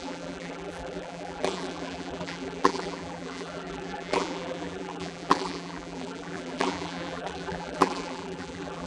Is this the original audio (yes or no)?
no